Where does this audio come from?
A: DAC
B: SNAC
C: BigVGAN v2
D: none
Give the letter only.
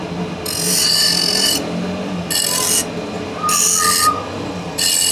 D